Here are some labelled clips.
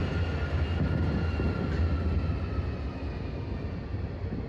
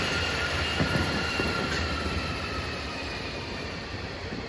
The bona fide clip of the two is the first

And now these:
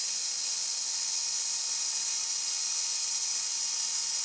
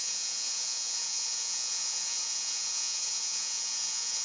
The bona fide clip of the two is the first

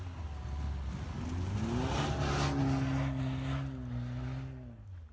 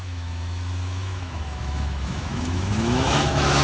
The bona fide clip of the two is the first